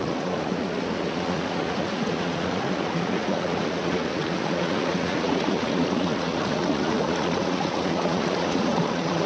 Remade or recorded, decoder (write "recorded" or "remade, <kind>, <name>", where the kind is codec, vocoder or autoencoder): remade, vocoder, Vocos